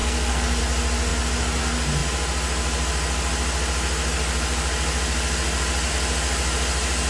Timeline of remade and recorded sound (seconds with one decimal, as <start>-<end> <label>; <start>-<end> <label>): 0.0-0.6 remade; 0.6-7.1 recorded